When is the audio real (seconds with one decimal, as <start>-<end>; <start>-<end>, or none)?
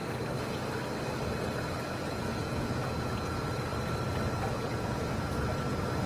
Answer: 0.0-1.9; 3.7-4.4; 5.5-6.1